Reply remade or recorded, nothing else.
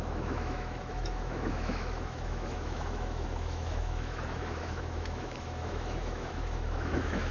remade